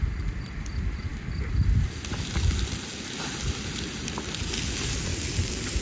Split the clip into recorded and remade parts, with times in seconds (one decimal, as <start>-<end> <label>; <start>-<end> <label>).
0.0-5.8 recorded